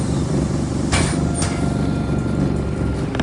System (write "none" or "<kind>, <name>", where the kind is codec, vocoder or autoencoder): none